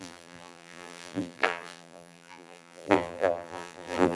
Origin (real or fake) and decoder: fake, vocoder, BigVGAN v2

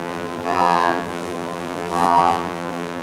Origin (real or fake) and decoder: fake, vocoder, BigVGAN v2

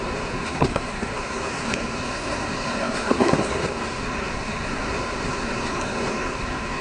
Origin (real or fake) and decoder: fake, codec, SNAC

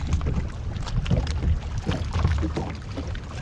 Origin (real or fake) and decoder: real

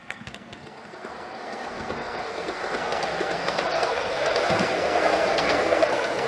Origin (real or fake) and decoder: fake, codec, SNAC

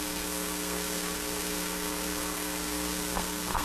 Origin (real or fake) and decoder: fake, codec, SNAC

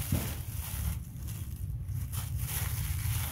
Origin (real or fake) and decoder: real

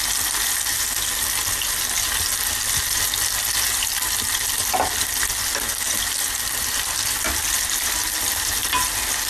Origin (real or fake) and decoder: real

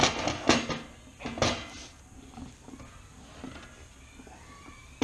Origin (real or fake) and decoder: real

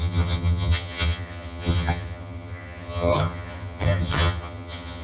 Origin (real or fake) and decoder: fake, vocoder, HiFi-GAN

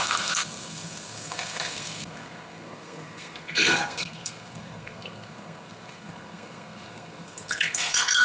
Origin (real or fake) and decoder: fake, codec, SNAC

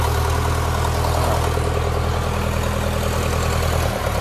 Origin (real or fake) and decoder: real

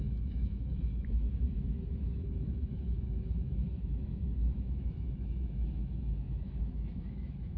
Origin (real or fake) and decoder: fake, autoencoder, DAC-VAE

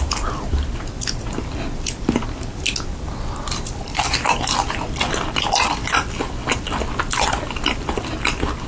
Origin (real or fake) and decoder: real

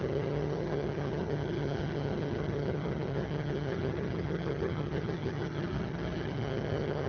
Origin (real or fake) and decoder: fake, vocoder, HiFi-GAN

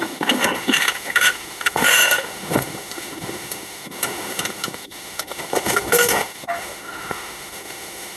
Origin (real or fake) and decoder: fake, autoencoder, DAC-VAE